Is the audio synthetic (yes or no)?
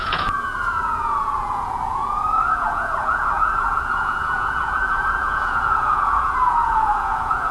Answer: yes